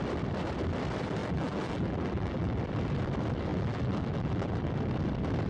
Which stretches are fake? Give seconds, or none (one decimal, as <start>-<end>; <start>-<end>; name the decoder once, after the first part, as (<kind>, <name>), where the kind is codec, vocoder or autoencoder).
1.2-2.6 (vocoder, BigVGAN v2); 3.5-4.6